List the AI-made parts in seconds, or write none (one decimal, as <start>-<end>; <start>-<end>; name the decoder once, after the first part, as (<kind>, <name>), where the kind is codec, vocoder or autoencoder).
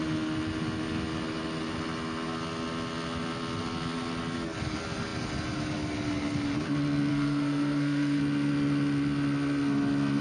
7.1-8.2 (codec, SNAC)